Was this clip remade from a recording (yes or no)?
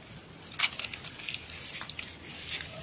no